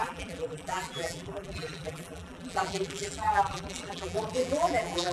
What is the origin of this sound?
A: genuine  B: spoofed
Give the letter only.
B